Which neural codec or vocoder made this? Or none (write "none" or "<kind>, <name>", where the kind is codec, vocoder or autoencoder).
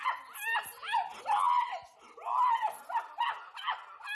none